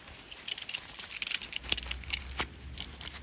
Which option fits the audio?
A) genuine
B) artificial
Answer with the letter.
A